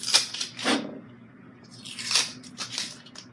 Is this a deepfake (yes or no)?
no